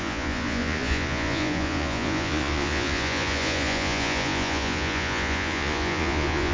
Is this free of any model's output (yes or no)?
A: no